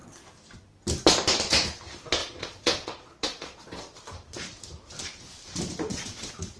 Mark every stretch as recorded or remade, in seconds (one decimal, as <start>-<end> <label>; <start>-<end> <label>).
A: 0.0-2.2 recorded; 2.2-3.8 remade; 3.8-5.9 recorded; 5.9-6.6 remade